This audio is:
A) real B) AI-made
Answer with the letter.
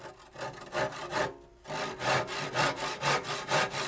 A